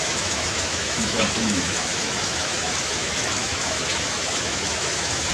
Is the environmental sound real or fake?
fake